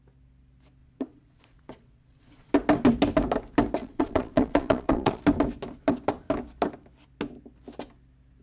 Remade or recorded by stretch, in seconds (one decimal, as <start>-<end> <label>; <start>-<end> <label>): 0.0-0.8 recorded; 0.8-2.5 remade; 2.5-3.8 recorded; 3.8-5.2 remade; 5.2-8.4 recorded